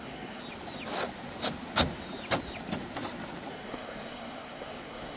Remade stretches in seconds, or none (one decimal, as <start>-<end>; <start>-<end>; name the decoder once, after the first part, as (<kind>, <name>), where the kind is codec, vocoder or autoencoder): 0.0-0.4 (codec, SNAC); 3.5-5.2